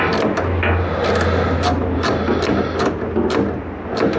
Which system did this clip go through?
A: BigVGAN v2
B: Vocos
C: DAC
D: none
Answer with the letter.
D